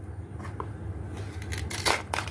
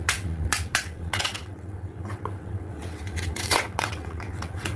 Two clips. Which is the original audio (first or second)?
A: first